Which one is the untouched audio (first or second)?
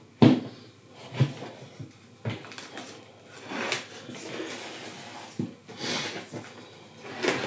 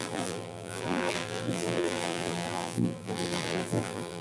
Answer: first